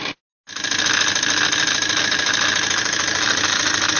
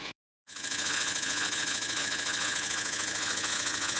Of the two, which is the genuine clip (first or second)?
first